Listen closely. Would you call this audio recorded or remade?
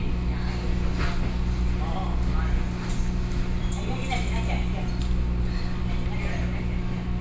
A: recorded